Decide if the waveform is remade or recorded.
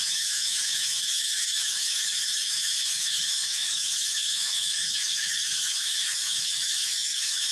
remade